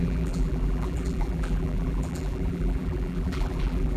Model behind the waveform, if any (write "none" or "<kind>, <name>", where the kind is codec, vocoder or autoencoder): vocoder, BigVGAN v2